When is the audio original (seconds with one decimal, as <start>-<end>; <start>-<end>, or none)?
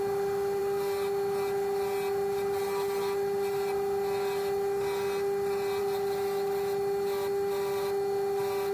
0.0-8.7